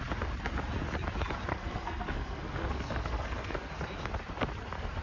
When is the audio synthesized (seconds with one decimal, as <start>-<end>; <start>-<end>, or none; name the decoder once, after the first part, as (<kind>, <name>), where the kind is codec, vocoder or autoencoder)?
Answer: 1.5-3.7 (codec, SNAC)